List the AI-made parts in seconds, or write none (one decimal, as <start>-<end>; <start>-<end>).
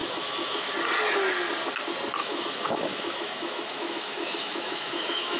0.0-0.7; 2.2-5.4